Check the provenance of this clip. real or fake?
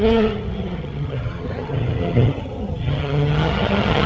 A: fake